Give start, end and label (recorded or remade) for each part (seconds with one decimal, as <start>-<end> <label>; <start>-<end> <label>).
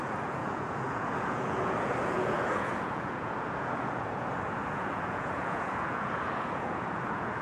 0.0-7.4 remade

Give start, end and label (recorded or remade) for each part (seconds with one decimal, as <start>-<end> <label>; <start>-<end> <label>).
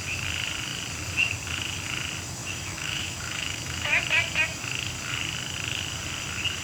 0.0-2.4 recorded; 2.4-4.0 remade; 4.0-6.6 recorded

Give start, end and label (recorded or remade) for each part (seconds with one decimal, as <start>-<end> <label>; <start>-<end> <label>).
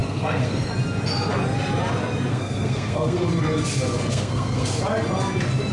0.0-0.7 remade; 0.7-2.3 recorded; 2.3-3.3 remade; 3.3-4.1 recorded; 4.1-4.8 remade; 4.8-5.7 recorded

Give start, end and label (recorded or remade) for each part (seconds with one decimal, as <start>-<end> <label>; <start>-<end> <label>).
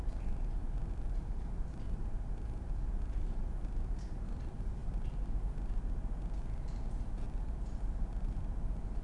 0.0-4.8 remade; 4.8-7.4 recorded; 7.4-9.0 remade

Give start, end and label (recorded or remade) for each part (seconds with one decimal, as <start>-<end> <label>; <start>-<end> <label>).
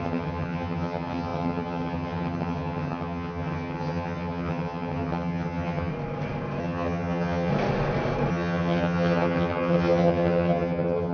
0.0-5.9 remade; 5.9-6.6 recorded; 6.6-7.5 remade; 7.5-8.3 recorded; 8.3-11.1 remade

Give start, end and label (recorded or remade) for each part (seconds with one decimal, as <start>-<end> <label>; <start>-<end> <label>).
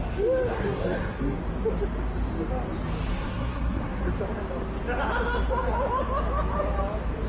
0.0-0.5 recorded; 0.5-1.4 remade; 1.4-3.1 recorded; 3.1-4.1 remade; 4.1-7.3 recorded